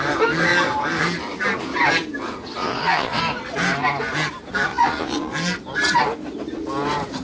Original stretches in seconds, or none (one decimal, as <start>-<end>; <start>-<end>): 0.0-2.6; 3.2-4.7; 5.3-7.2